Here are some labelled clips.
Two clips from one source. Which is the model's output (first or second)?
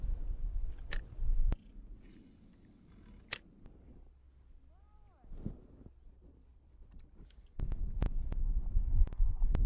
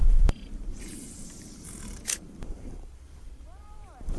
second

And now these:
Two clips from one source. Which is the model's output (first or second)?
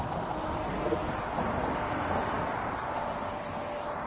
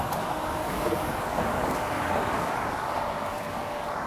second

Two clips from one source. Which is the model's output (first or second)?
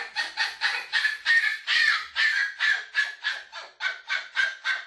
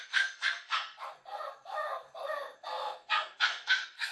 second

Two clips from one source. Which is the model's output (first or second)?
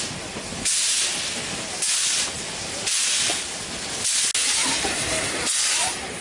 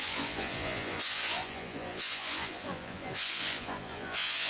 second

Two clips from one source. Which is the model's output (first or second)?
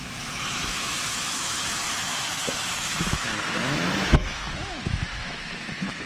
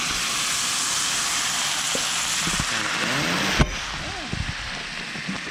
first